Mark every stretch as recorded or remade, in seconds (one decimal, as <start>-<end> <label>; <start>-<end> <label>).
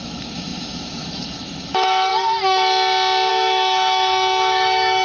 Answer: 0.0-2.1 remade; 2.1-3.3 recorded; 3.3-5.0 remade